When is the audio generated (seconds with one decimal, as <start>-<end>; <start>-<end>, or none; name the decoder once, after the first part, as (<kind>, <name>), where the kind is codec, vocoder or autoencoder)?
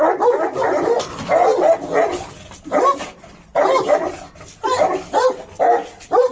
3.5-4.2 (vocoder, BigVGAN v2)